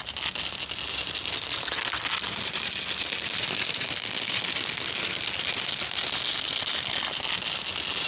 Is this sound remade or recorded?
recorded